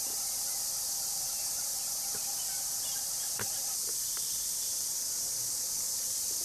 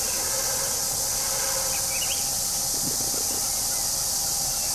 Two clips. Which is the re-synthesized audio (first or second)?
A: first